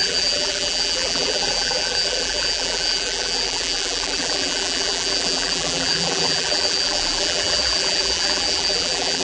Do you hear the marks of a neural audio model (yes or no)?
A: yes